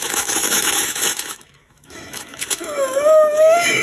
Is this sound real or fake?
fake